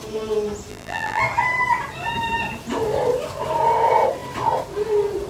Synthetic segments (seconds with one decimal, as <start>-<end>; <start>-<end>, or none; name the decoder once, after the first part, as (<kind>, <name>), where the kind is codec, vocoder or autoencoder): 0.7-1.2 (vocoder, BigVGAN v2)